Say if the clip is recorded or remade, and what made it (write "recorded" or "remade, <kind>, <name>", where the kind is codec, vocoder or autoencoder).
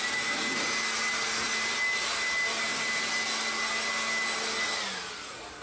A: recorded